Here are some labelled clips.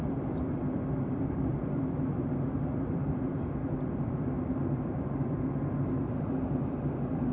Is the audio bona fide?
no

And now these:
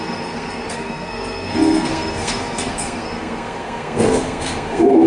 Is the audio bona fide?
no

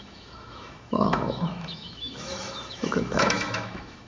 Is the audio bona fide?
no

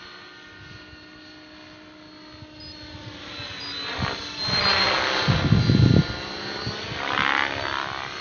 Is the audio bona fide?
yes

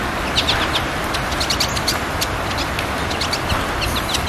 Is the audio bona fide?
yes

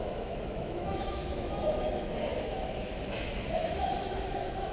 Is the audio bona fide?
no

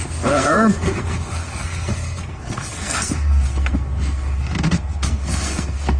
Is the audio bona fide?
no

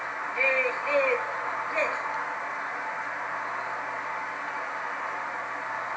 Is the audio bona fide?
yes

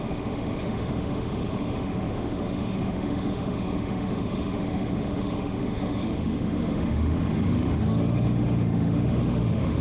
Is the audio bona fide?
no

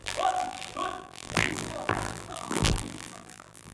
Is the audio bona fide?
no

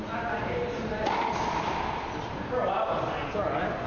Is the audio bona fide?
yes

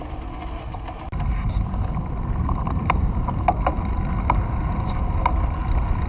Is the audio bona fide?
yes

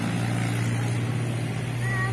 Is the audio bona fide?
yes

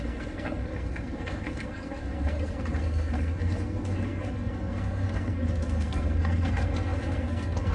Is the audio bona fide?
no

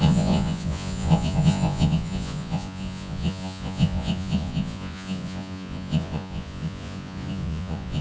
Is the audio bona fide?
no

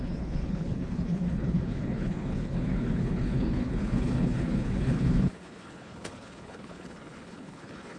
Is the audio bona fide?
no